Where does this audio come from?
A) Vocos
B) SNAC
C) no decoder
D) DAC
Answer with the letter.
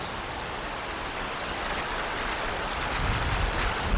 C